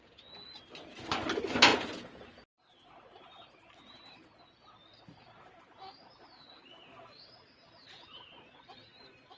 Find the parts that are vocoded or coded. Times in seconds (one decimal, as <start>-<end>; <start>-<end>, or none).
1.7-2.2

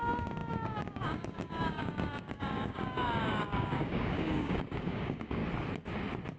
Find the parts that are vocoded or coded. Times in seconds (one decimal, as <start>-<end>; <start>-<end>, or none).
0.0-5.4

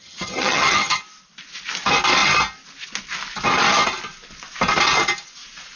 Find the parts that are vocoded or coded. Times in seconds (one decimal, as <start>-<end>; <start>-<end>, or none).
0.0-1.0